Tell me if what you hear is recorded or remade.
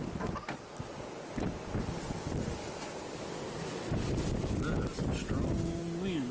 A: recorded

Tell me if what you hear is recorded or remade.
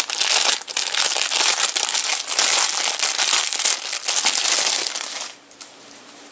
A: recorded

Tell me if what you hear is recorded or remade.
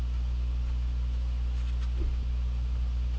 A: recorded